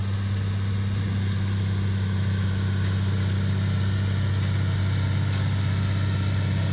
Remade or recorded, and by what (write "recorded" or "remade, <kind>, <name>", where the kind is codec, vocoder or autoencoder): recorded